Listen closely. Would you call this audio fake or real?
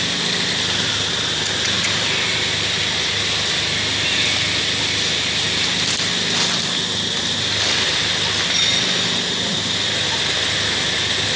real